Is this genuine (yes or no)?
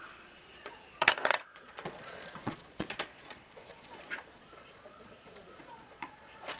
no